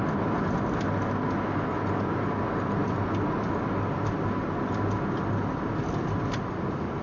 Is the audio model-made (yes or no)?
no